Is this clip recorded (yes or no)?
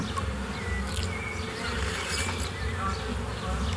yes